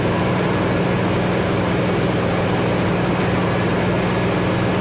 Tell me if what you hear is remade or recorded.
recorded